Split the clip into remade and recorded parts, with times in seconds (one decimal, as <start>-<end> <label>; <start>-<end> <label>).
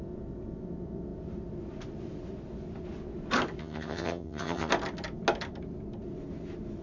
0.0-3.6 recorded; 3.6-4.7 remade; 4.7-6.8 recorded